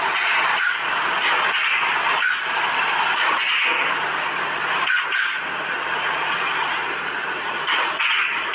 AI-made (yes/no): no